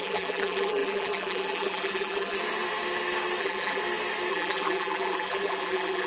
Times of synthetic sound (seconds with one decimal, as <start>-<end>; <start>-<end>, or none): 0.0-2.4; 3.4-3.8; 4.3-6.1